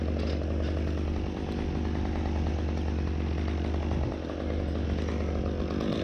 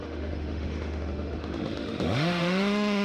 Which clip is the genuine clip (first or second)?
first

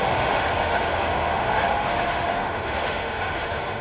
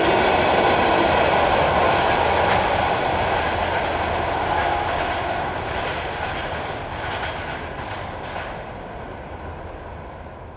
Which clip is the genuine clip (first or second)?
second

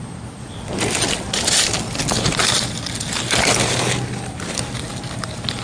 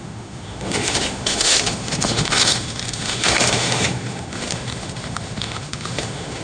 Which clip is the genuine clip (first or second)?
first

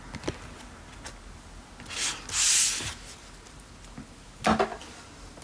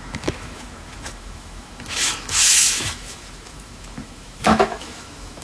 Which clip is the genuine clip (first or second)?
first